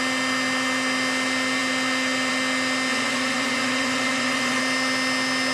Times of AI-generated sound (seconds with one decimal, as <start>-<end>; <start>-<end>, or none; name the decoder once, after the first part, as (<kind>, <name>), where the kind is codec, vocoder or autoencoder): 2.9-4.6 (vocoder, Vocos)